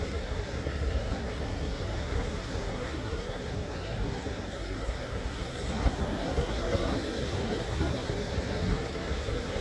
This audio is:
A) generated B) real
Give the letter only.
A